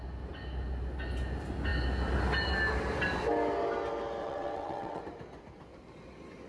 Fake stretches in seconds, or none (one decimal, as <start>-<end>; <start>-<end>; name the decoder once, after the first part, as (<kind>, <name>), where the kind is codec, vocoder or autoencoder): 4.2-5.0 (vocoder, WaveNeXt)